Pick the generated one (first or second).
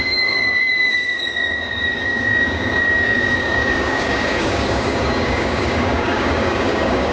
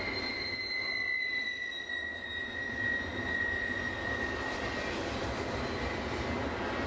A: first